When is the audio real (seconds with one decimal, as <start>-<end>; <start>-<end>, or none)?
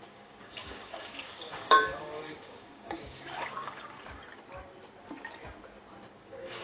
4.3-6.1